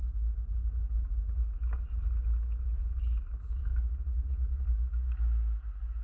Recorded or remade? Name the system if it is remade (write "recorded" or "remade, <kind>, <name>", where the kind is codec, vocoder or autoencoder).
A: recorded